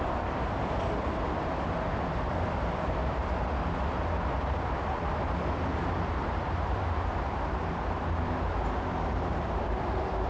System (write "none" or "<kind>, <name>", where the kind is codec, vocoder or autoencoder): vocoder, BigVGAN v2